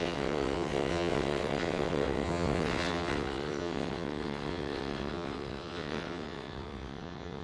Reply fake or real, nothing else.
fake